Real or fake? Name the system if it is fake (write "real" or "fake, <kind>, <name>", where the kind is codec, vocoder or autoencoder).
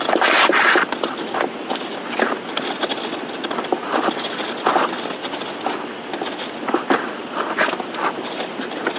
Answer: real